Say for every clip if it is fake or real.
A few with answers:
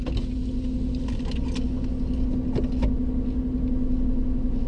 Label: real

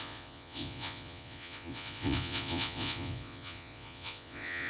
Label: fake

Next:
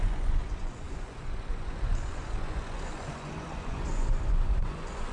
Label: fake